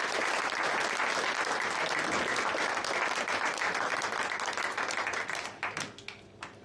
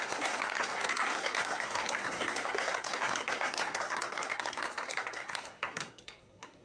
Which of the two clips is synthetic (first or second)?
second